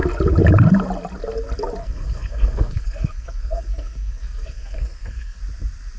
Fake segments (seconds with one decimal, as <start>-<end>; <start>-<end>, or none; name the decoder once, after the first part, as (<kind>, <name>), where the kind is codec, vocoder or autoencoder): 1.8-5.4 (codec, SNAC)